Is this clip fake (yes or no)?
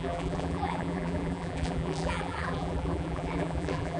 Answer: yes